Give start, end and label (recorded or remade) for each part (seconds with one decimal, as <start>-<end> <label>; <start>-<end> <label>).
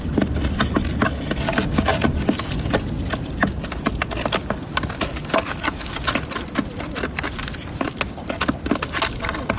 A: 0.0-9.6 recorded